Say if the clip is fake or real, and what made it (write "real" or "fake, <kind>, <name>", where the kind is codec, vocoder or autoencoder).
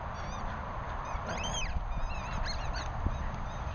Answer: real